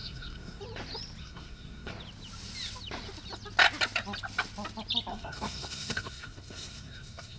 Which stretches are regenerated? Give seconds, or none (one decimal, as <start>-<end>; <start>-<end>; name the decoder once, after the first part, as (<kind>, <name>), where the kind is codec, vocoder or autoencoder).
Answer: 0.0-0.6 (codec, SNAC); 1.2-1.9; 5.1-7.4